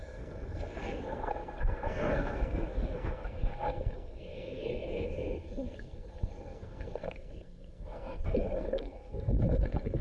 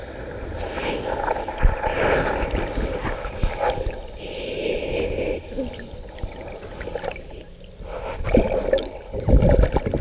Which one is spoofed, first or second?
first